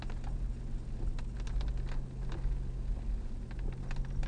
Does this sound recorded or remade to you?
recorded